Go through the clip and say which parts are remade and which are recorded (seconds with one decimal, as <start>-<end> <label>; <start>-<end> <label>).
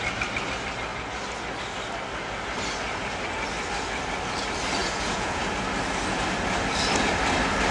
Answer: 0.0-4.8 recorded; 4.8-5.4 remade; 5.4-7.7 recorded